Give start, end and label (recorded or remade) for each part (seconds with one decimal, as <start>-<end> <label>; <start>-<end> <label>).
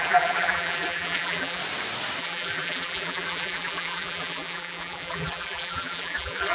0.0-1.6 remade; 1.6-2.2 recorded; 2.2-6.5 remade